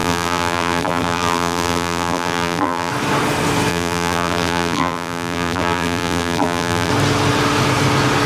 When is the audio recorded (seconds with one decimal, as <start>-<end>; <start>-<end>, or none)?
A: 2.9-3.7; 6.9-8.3